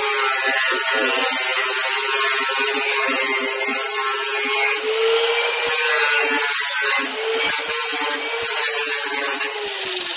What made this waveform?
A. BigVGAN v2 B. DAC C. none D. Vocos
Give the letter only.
C